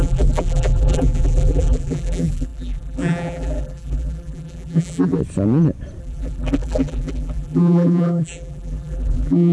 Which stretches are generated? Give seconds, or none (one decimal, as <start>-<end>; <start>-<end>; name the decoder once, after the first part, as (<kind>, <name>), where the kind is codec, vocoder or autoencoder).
0.0-5.2 (vocoder, BigVGAN v2); 6.0-9.5